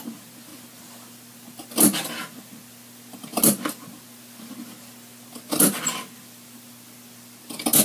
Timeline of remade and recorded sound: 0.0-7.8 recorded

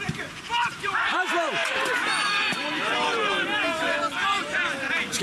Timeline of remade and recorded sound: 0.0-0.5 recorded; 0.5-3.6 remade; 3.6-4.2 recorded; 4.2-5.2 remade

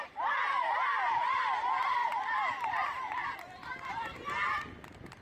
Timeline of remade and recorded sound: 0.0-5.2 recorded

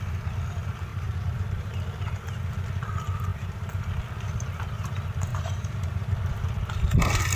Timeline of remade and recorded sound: 0.0-0.9 recorded; 0.9-1.7 remade; 1.7-3.3 recorded; 3.3-3.9 remade; 3.9-5.3 recorded; 5.3-6.1 remade; 6.1-7.4 recorded

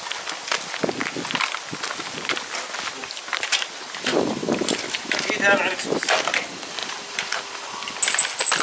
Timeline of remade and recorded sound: 0.0-3.0 recorded; 3.0-5.2 remade; 5.2-6.8 recorded; 6.8-7.4 remade; 7.4-8.6 recorded